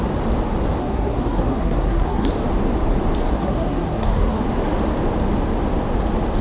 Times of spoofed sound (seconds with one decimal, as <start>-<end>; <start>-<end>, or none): 0.8-2.3; 3.4-4.4